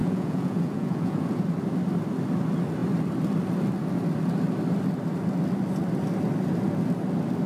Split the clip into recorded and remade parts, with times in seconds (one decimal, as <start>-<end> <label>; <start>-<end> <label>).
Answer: 0.0-1.3 remade; 1.3-7.5 recorded